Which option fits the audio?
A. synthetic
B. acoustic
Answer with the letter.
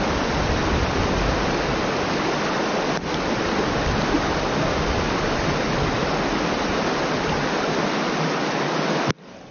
B